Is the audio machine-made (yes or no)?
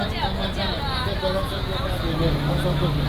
no